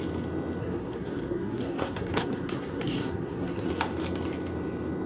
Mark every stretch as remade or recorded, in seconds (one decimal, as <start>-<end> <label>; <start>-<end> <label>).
0.0-0.6 recorded; 0.6-3.7 remade; 3.7-5.1 recorded